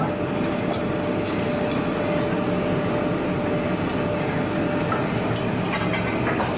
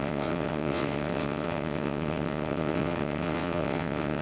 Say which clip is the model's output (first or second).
second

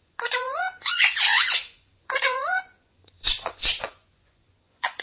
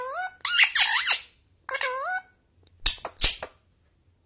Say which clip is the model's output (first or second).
first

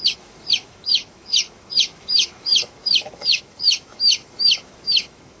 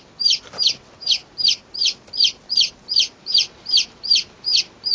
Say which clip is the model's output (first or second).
first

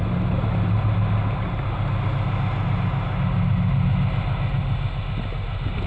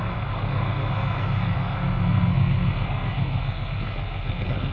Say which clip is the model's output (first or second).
second